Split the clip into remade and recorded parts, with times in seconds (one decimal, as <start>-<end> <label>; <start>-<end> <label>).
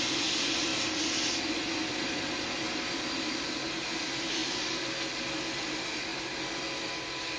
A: 0.0-7.4 recorded